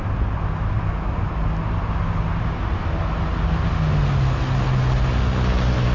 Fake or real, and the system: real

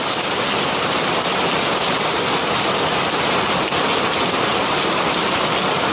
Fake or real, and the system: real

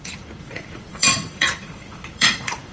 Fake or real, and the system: fake, vocoder, Vocos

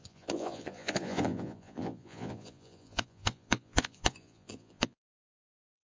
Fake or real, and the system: fake, vocoder, Vocos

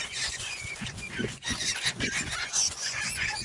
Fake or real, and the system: fake, vocoder, Vocos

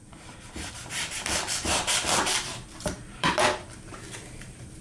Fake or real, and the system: fake, vocoder, BigVGAN v2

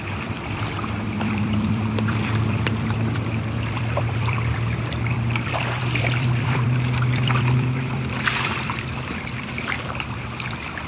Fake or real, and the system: fake, vocoder, BigVGAN v2